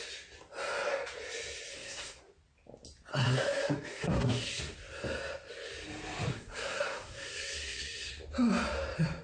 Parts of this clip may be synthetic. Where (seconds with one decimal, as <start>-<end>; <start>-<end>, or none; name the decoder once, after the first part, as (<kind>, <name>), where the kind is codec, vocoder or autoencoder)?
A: 1.7-2.2 (codec, SNAC); 3.1-4.6; 6.3-8.1